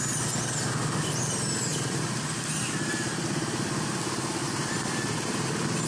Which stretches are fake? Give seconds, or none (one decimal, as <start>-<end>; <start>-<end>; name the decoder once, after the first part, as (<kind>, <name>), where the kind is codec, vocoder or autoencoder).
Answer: 1.7-2.6 (vocoder, BigVGAN v2)